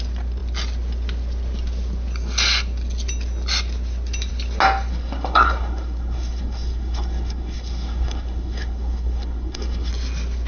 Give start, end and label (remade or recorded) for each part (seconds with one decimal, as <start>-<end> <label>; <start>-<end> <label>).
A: 0.0-4.9 recorded; 4.9-9.9 remade; 9.9-10.5 recorded